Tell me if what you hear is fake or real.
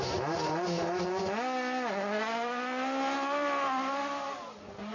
real